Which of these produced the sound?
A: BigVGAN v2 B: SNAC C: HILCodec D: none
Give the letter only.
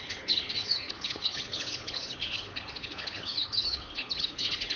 C